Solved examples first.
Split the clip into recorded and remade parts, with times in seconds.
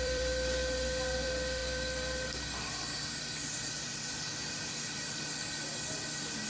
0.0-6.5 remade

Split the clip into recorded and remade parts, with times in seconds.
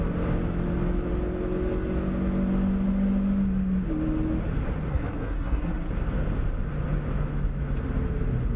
0.0-4.9 recorded; 4.9-5.9 remade; 5.9-8.6 recorded